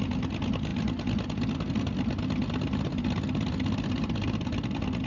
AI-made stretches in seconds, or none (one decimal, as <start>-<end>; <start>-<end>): none